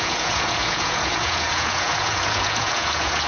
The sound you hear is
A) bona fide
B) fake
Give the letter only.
B